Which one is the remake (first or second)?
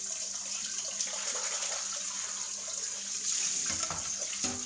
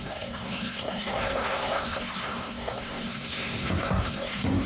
second